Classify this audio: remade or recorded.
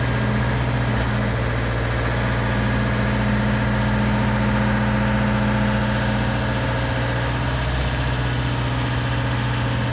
recorded